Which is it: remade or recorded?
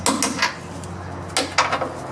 recorded